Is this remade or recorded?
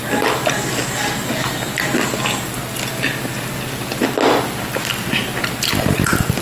recorded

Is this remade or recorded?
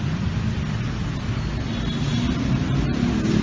recorded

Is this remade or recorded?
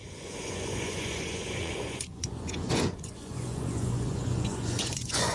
remade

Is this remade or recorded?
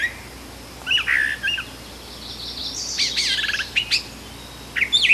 recorded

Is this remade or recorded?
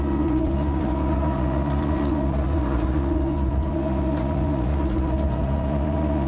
remade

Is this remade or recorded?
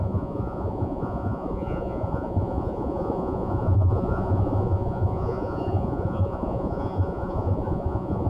remade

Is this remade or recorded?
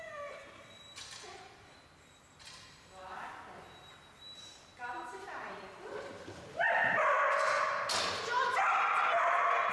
recorded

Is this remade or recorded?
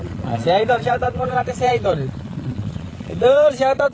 remade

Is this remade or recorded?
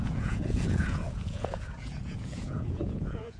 remade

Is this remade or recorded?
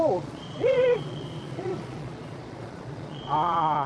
remade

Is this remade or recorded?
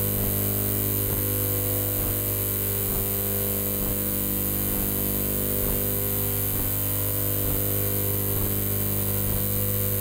recorded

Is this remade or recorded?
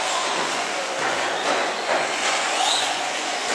remade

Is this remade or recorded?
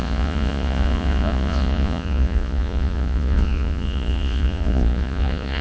remade